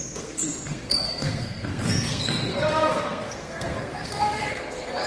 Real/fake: fake